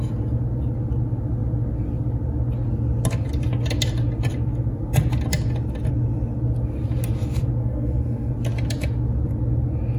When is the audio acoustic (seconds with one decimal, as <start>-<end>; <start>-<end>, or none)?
0.0-7.6; 8.3-10.0